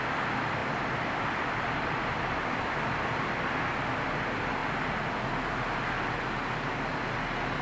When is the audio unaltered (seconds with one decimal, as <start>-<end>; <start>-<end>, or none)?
0.0-0.6; 2.8-7.6